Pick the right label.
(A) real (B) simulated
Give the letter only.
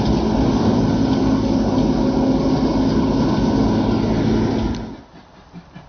A